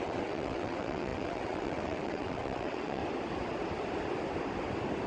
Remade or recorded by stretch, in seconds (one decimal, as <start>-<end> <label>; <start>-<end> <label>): 0.0-3.0 remade; 3.0-5.1 recorded